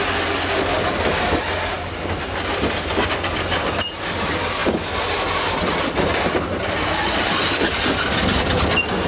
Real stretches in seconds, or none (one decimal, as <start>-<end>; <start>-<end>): 0.0-9.1